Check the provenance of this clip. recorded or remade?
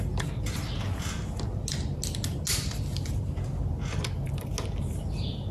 recorded